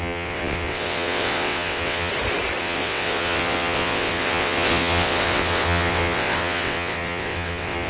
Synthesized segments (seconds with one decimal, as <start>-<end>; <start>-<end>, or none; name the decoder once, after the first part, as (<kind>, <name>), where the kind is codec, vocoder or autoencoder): 0.0-2.1 (vocoder, WaveNeXt); 2.6-7.9